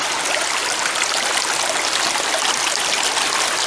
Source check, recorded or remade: recorded